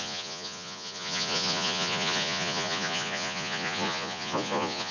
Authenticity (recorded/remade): remade